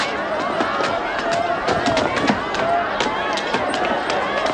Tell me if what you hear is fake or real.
real